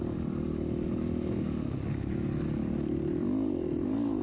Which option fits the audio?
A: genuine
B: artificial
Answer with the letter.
A